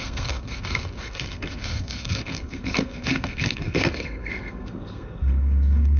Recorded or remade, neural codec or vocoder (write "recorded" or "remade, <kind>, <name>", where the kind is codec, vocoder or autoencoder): remade, codec, SNAC